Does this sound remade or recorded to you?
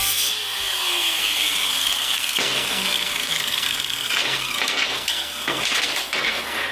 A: remade